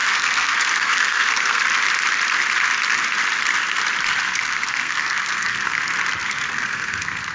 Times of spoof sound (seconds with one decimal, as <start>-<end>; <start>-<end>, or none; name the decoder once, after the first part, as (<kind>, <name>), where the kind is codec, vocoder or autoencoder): 0.0-1.6 (codec, SNAC); 4.2-5.8; 6.2-7.3

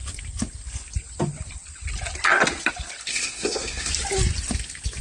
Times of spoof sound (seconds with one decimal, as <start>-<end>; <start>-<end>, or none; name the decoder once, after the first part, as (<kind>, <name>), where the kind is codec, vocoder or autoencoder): 3.1-3.9 (codec, SNAC)

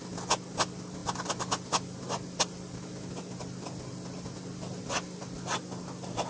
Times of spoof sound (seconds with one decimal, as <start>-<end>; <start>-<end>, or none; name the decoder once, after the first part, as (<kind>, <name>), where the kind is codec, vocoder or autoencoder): none

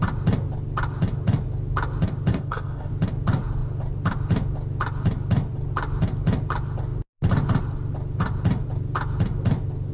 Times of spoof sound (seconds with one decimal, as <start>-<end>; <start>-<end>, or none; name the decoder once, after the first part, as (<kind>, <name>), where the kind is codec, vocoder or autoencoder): 2.3-2.9 (codec, SNAC)

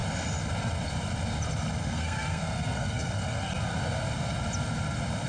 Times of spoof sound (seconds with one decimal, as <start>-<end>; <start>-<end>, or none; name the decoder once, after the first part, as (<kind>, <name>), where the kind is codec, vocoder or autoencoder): 1.8-3.5 (codec, SNAC)

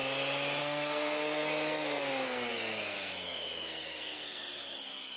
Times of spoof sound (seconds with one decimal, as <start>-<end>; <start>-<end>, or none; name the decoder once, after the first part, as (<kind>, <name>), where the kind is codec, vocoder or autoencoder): 0.6-5.2 (codec, SNAC)

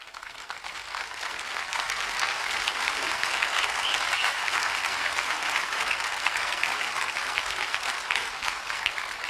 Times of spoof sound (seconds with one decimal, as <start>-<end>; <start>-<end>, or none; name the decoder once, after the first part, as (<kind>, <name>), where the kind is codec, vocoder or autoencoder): 0.0-9.3 (codec, SNAC)

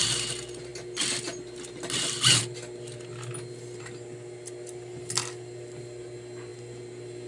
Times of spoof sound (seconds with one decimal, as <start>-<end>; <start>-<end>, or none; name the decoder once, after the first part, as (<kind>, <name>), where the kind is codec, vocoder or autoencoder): none